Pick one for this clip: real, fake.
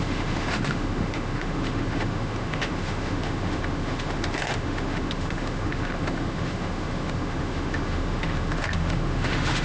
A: fake